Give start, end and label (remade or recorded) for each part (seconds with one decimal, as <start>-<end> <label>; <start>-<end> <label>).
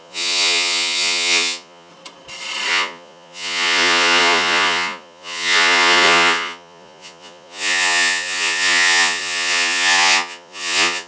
0.0-1.9 remade; 1.9-2.7 recorded; 2.7-11.1 remade